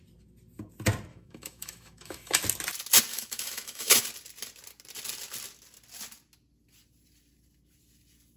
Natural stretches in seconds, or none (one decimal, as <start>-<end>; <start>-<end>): 0.0-1.1; 2.4-3.1; 4.0-8.4